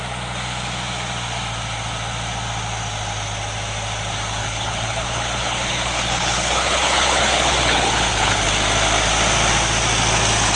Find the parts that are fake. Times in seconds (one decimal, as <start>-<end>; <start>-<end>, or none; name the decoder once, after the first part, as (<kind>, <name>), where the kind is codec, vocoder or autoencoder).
4.4-8.5 (codec, HILCodec)